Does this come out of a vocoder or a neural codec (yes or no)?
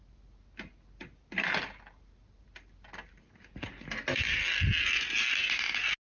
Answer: no